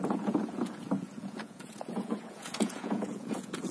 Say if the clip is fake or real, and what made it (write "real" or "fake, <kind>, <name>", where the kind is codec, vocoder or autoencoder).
fake, vocoder, Vocos